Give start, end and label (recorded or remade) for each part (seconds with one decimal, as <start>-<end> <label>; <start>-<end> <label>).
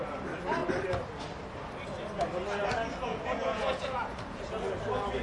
0.0-3.1 recorded; 3.1-4.4 remade; 4.4-5.2 recorded